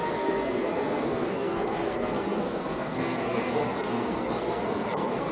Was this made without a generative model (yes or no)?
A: no